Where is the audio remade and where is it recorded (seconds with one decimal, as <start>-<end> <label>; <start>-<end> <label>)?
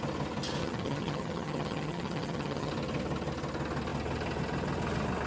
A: 0.0-0.6 recorded; 0.6-2.7 remade; 2.7-5.3 recorded